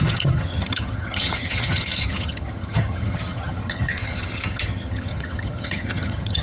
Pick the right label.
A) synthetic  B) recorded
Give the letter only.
A